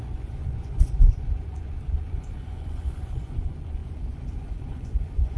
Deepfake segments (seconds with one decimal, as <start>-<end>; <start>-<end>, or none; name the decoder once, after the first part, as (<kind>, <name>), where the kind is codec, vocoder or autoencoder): 0.0-5.4 (vocoder, Vocos)